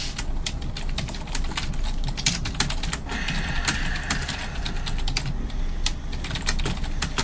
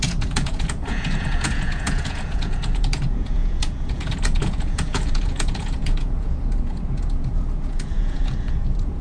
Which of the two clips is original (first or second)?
first